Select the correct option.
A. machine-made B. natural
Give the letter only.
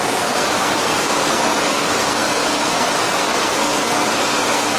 A